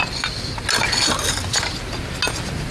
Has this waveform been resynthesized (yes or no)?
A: no